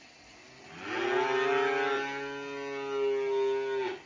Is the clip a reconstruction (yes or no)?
no